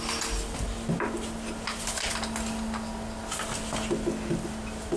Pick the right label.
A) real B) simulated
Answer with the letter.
A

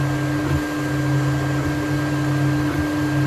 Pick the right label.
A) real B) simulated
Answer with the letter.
A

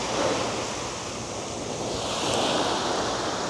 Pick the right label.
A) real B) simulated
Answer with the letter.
A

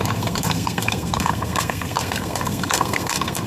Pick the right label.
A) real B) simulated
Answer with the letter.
B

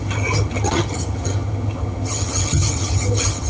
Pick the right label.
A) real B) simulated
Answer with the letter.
B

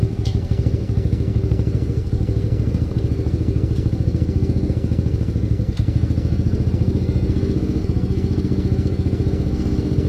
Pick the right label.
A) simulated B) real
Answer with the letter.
A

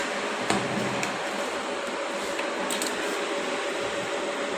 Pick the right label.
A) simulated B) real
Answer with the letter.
B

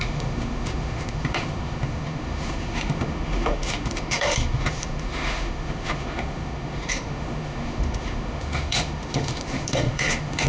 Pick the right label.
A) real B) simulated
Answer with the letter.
B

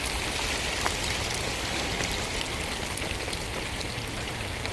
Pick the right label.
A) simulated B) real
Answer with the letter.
A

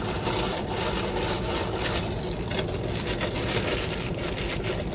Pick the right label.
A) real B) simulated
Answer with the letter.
A